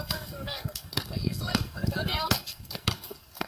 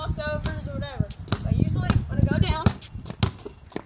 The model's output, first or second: first